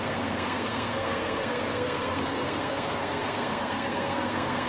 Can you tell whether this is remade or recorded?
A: remade